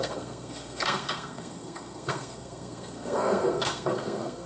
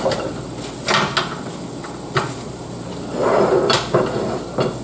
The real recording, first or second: second